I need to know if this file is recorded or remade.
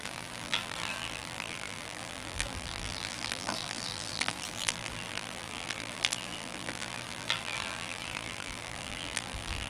remade